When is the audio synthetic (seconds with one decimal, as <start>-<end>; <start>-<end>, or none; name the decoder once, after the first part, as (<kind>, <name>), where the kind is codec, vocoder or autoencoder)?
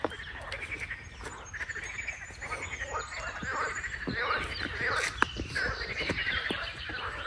6.2-7.3 (vocoder, BigVGAN v2)